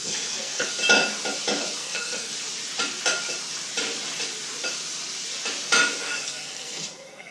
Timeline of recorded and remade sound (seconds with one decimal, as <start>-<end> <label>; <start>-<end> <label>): 0.0-0.7 remade; 0.7-1.8 recorded; 1.8-2.3 remade; 2.3-6.0 recorded; 6.0-7.3 remade